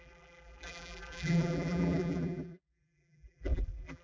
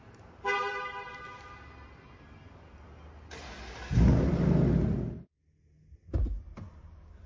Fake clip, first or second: first